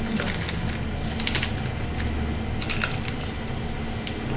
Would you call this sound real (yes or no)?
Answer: yes